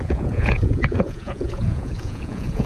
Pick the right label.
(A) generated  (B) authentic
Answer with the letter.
A